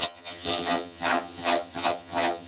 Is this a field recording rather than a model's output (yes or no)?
no